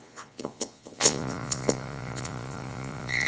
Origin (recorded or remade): remade